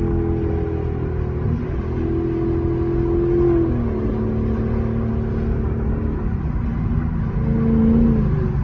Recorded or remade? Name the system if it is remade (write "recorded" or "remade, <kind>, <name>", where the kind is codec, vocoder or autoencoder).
recorded